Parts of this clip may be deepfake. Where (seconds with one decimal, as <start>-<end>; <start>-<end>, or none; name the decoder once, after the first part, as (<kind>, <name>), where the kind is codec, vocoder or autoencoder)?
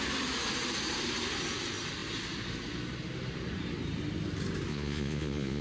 4.7-5.6 (vocoder, Vocos)